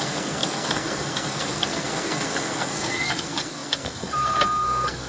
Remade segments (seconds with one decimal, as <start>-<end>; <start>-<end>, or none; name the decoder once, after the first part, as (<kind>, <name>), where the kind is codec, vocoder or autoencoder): 0.0-5.1 (codec, SNAC)